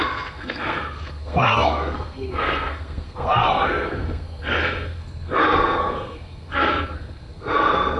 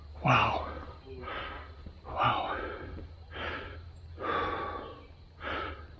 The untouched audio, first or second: second